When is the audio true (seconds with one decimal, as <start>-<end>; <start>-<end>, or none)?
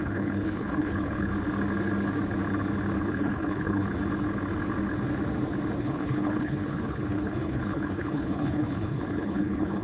1.3-3.0; 3.9-5.8